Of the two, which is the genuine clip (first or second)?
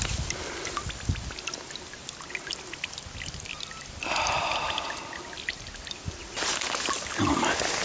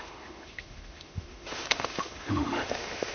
first